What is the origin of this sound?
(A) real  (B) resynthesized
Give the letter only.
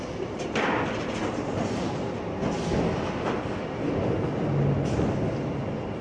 A